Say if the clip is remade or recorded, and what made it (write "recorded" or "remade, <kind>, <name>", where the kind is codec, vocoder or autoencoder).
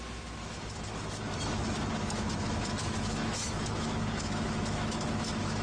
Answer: remade, autoencoder, DAC-VAE